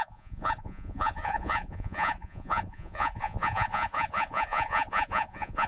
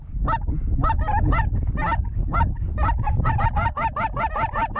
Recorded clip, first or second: second